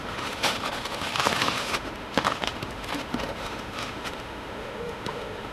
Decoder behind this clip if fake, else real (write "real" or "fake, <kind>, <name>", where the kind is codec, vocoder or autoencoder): fake, autoencoder, DAC-VAE